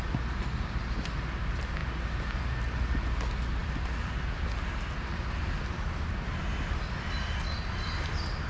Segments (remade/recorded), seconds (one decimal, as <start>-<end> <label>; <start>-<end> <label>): 0.0-8.5 recorded